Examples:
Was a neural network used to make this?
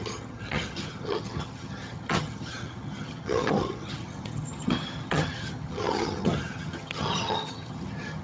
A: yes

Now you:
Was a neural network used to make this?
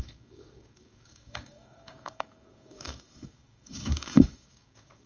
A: yes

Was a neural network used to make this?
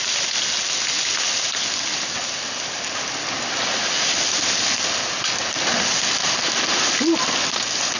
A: no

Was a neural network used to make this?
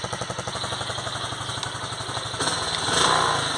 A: no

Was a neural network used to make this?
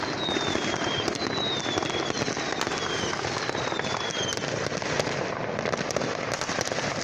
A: no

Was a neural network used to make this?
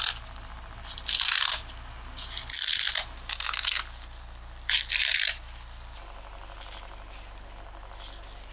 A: no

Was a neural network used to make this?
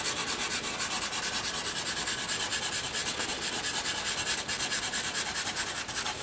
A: no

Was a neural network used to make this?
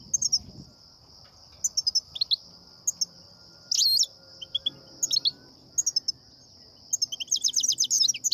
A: no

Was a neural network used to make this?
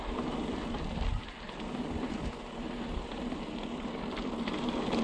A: no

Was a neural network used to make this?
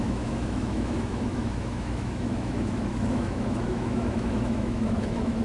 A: yes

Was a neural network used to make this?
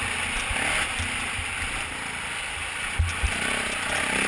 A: no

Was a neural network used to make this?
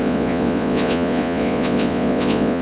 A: yes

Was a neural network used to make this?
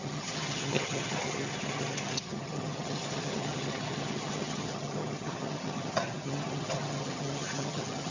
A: yes